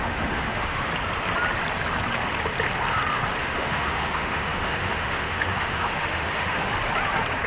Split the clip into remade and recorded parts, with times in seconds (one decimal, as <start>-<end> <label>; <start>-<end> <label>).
0.0-0.9 remade; 0.9-3.4 recorded; 3.4-6.7 remade; 6.7-7.5 recorded